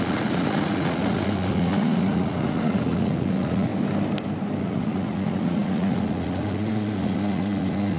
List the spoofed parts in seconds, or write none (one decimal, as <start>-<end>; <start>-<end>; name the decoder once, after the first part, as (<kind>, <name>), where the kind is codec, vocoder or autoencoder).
0.0-3.7 (vocoder, Vocos); 4.6-8.0